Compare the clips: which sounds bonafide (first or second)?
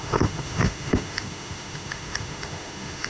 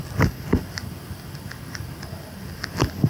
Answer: second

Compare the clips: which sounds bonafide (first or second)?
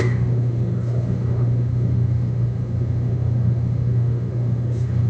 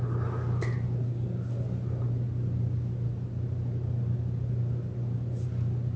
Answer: second